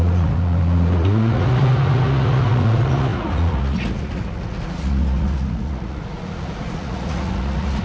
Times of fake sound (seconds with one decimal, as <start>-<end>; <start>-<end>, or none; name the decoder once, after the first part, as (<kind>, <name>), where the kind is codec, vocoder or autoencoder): 0.0-7.8 (vocoder, Vocos)